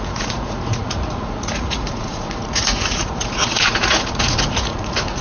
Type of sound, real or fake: fake